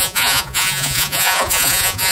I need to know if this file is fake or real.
fake